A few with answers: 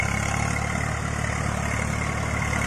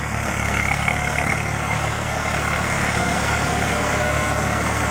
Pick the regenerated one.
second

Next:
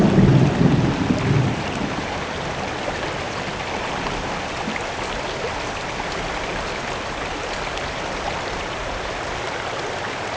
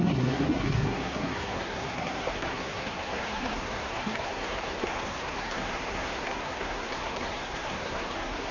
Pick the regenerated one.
second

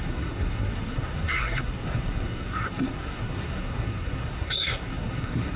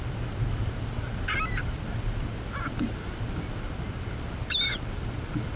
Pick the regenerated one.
first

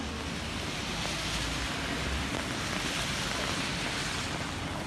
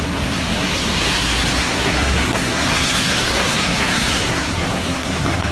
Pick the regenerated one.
second